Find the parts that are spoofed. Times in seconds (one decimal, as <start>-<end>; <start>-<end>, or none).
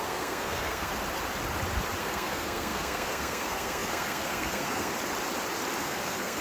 0.0-0.9; 2.0-4.9; 5.8-6.4